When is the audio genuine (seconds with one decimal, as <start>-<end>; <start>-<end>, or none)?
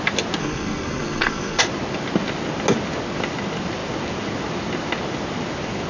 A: 0.0-0.4; 1.6-5.9